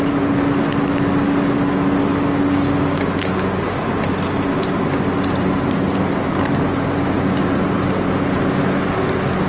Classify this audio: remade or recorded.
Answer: recorded